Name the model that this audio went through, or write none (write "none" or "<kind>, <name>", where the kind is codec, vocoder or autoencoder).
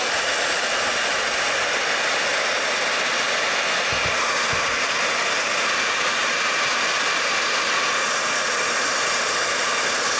none